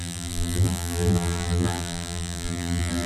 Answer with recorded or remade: remade